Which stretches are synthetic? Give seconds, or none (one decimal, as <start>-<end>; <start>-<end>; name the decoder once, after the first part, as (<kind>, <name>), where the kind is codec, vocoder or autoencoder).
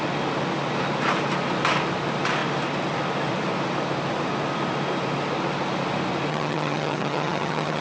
6.3-7.8 (vocoder, HiFi-GAN)